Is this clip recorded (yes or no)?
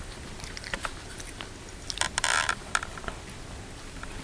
yes